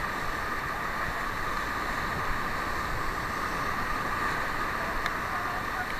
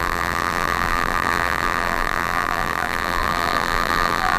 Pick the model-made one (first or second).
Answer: second